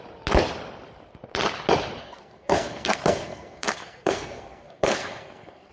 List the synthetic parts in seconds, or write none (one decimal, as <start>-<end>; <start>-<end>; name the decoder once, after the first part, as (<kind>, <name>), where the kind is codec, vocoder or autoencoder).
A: 2.0-5.7 (codec, SNAC)